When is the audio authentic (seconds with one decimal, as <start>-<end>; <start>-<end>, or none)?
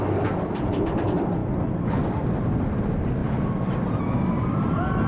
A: 1.4-2.4; 3.2-4.0